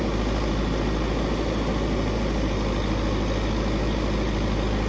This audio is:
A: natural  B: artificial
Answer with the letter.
A